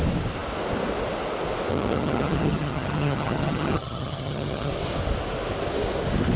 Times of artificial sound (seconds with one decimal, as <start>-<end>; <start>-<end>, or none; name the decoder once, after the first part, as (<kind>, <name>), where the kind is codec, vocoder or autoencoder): 1.7-4.7 (vocoder, HiFi-GAN)